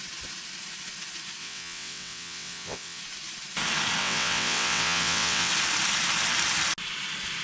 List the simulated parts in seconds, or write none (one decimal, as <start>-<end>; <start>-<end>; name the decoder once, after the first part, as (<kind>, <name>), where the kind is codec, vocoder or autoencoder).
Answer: 1.4-3.0 (vocoder, WaveNeXt); 4.0-5.5